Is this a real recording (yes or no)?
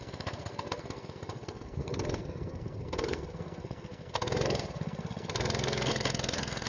no